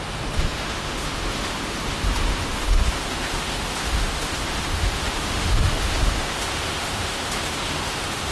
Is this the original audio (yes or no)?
no